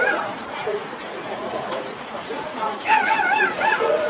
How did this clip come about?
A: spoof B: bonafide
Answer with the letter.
A